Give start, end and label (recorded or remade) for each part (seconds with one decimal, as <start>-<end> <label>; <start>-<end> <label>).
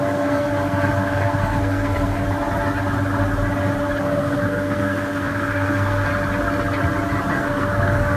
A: 0.0-2.2 remade; 2.2-4.0 recorded; 4.0-6.1 remade; 6.1-7.3 recorded; 7.3-8.2 remade